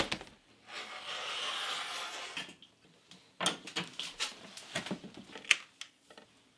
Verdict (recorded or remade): recorded